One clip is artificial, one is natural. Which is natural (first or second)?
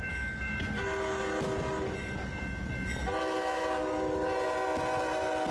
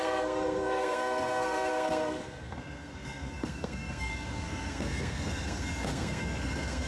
first